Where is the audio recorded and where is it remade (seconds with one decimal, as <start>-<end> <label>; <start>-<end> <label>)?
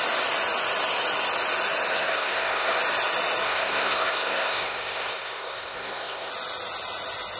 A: 0.0-1.9 recorded; 1.9-2.8 remade; 2.8-3.4 recorded; 3.4-6.3 remade; 6.3-7.4 recorded